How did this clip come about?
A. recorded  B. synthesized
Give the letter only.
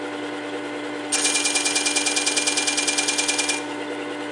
A